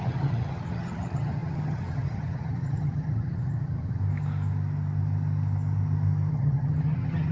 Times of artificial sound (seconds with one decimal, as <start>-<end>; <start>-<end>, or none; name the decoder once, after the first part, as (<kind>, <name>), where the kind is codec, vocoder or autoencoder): 0.0-4.0 (vocoder, HiFi-GAN); 6.3-7.3

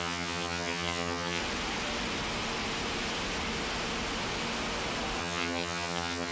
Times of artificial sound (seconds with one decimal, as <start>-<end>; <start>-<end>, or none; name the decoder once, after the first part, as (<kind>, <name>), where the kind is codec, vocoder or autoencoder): 0.0-1.4 (vocoder, HiFi-GAN); 5.2-6.3